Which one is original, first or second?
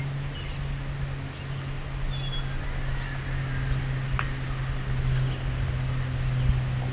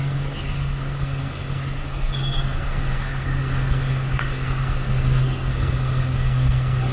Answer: first